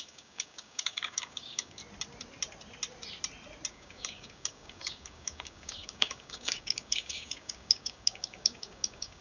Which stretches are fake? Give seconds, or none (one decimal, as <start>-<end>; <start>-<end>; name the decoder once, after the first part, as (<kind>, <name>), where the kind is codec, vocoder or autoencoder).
0.0-1.8 (codec, DAC); 3.7-9.2